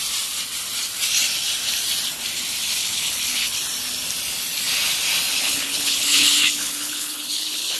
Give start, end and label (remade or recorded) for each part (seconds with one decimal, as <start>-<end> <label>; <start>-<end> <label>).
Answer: 0.0-2.8 recorded; 2.8-3.6 remade; 3.6-5.3 recorded; 5.3-7.8 remade